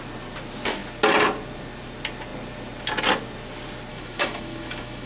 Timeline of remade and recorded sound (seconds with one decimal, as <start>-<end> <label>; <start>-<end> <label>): 0.0-3.9 recorded; 3.9-5.1 remade

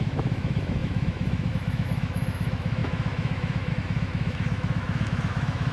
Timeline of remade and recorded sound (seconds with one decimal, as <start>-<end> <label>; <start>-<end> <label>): 0.0-5.7 remade

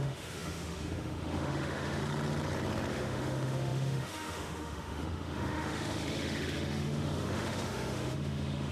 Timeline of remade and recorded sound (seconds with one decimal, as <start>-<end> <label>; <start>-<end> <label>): 0.0-2.0 remade; 2.0-2.9 recorded; 2.9-8.7 remade

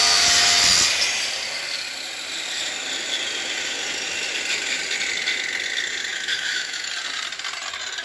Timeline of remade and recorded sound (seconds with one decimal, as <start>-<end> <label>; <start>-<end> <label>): 0.0-6.1 recorded; 6.1-6.8 remade; 6.8-8.0 recorded